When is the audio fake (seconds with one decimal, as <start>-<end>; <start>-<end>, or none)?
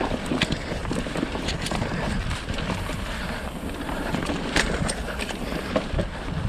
0.8-4.7